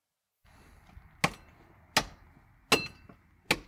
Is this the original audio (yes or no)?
yes